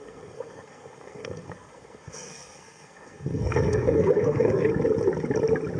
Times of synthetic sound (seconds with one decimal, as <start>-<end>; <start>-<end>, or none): 0.0-4.7